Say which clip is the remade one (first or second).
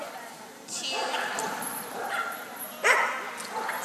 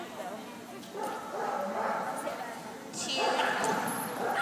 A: first